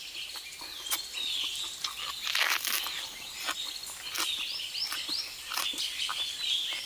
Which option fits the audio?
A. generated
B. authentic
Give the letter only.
B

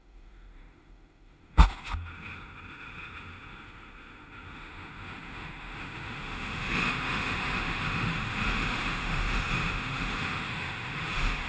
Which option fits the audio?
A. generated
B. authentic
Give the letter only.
A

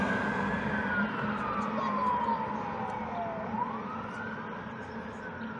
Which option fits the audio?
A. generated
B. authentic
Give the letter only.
B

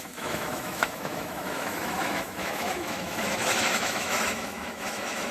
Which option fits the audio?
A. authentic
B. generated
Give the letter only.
B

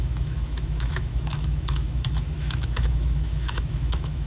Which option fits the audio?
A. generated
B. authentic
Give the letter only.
A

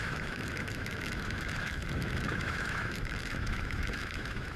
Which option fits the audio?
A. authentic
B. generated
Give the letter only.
B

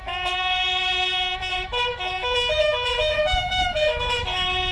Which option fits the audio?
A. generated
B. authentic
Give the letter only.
A